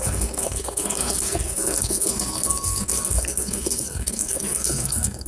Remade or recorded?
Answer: remade